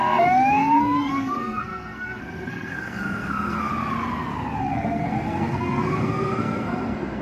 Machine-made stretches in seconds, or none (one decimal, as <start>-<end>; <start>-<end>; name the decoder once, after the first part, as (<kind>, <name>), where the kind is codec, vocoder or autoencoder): 0.0-3.7 (codec, SNAC); 4.6-7.2

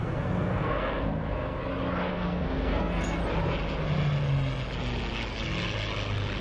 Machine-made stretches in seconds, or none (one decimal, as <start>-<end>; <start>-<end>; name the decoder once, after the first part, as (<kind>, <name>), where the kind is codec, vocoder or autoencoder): 0.0-1.6 (codec, SNAC); 2.1-3.2

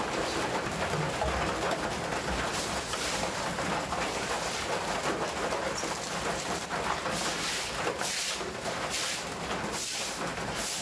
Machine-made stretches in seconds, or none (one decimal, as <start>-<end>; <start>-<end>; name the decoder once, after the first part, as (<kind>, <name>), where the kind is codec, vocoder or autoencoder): none

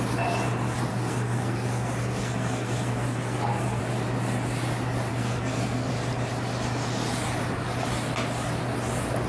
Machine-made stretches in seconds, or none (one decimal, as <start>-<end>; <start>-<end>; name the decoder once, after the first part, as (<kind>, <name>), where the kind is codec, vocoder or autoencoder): 0.9-3.8 (codec, SNAC); 5.1-5.9